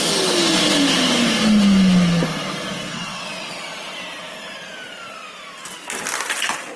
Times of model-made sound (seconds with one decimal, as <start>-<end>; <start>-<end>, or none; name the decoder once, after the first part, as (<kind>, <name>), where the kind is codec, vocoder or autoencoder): 2.9-3.6 (vocoder, WaveNeXt)